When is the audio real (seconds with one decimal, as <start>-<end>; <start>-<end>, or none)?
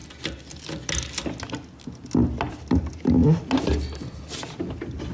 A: 0.0-5.1